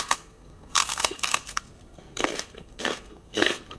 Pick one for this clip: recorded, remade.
remade